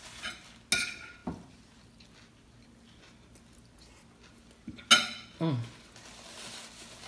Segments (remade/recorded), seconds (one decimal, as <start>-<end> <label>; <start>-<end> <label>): 0.0-7.1 recorded